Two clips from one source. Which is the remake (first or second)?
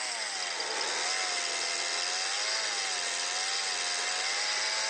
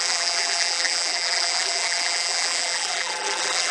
second